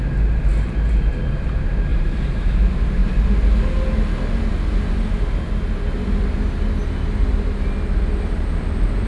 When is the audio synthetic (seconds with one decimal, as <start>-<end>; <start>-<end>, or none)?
1.9-2.6